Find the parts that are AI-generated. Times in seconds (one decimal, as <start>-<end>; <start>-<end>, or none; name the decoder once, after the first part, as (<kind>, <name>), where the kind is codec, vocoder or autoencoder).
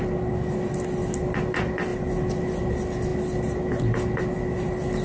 none